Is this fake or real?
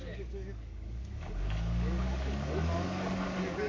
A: fake